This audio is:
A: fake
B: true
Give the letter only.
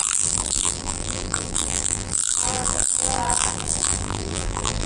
A